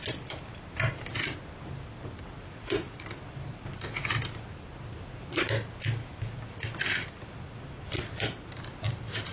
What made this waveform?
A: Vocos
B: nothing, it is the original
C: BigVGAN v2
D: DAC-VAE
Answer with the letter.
B